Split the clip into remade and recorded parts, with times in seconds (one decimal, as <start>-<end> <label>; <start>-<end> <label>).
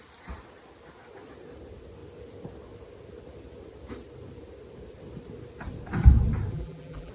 0.0-6.5 recorded; 6.5-7.1 remade